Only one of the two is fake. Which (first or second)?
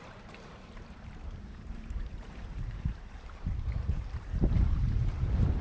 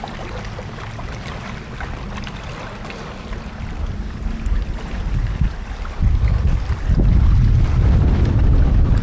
first